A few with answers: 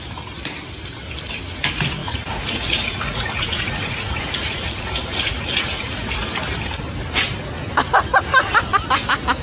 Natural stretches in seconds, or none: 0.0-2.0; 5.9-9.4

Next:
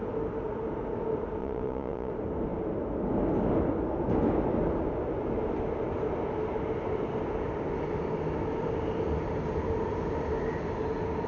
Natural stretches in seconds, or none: 0.0-1.4; 2.1-11.3

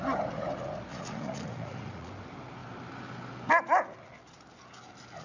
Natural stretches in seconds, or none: 0.0-0.9; 2.1-5.2

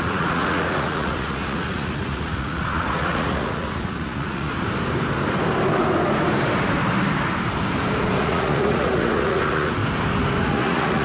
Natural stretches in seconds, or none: 4.5-8.2; 9.8-10.4

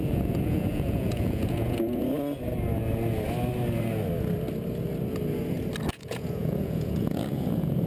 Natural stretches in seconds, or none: 2.0-5.9

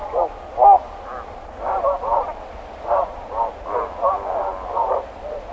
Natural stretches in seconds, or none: 0.0-5.5

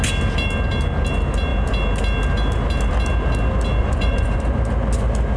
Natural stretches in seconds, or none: 0.0-3.8; 4.4-5.4